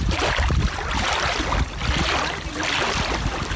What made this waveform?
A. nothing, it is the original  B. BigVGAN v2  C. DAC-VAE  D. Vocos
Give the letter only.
A